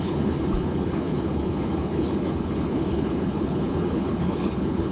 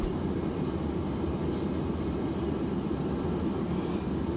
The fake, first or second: first